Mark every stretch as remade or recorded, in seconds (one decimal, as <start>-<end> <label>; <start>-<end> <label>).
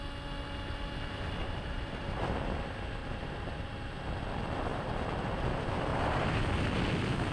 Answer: 0.0-1.4 recorded; 1.4-2.2 remade; 2.2-3.0 recorded; 3.0-3.8 remade; 3.8-5.9 recorded; 5.9-6.4 remade; 6.4-7.3 recorded